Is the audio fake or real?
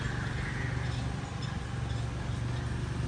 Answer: real